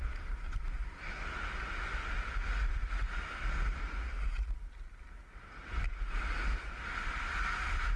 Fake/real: real